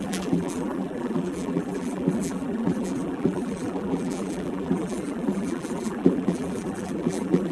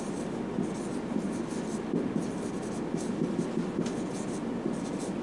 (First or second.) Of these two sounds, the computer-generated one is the first